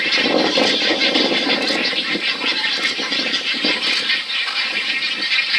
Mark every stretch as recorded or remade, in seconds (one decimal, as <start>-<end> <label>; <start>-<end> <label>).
0.0-5.6 recorded